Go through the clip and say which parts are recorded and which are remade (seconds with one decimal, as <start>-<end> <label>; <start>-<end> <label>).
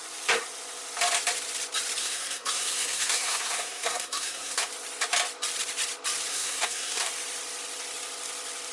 0.0-2.0 recorded; 2.0-4.7 remade; 4.7-6.3 recorded; 6.3-7.1 remade; 7.1-8.7 recorded